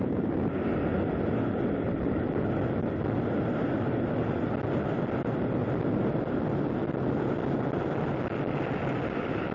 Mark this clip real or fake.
real